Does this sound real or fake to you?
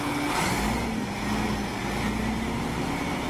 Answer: real